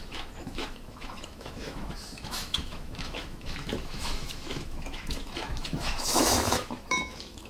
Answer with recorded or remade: remade